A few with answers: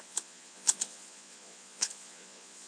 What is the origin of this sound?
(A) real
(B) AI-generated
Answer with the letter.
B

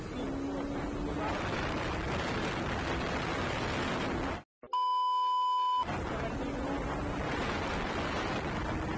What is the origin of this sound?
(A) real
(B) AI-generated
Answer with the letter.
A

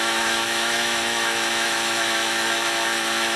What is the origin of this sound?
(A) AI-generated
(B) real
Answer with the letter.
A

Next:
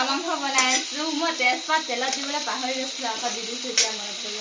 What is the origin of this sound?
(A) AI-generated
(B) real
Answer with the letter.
B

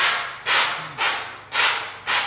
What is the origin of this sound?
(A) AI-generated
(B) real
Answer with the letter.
B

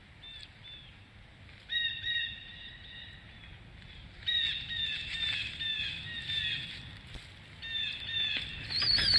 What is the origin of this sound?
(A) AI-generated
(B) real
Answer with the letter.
B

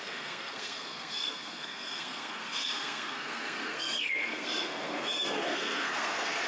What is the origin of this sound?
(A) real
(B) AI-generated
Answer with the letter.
B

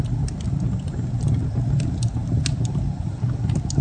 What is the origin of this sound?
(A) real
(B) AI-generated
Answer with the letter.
A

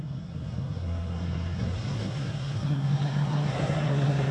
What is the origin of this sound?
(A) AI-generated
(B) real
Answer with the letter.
A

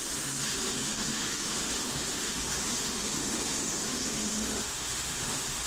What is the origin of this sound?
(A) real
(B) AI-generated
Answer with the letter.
B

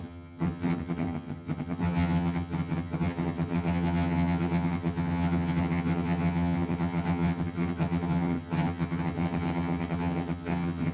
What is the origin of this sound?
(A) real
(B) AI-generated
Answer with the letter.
B